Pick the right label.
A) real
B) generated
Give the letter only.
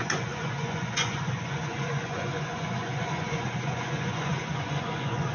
B